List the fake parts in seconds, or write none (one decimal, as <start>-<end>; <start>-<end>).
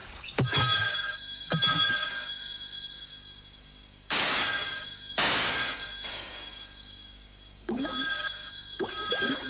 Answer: 0.0-9.5